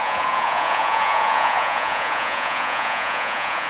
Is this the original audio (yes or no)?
no